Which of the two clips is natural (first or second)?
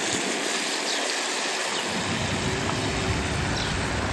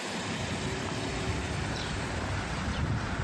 first